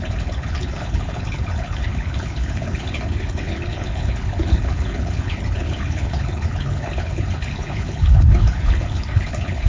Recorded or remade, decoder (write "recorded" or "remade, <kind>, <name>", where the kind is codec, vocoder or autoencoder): remade, codec, HILCodec